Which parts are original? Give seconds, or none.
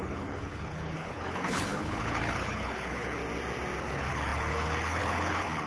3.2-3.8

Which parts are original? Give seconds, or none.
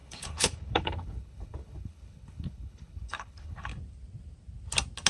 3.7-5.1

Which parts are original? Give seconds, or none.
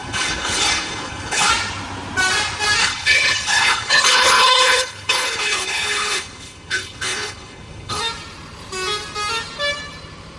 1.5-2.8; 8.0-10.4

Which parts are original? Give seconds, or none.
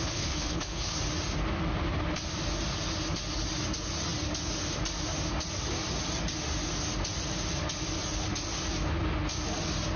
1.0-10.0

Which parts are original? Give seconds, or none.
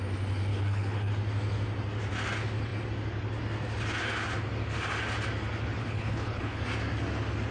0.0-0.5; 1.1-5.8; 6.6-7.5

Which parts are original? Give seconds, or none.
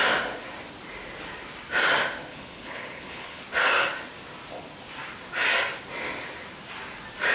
0.0-2.3; 3.4-7.3